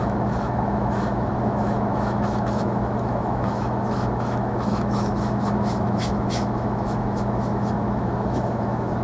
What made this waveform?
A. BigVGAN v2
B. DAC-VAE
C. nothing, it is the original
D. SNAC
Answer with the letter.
B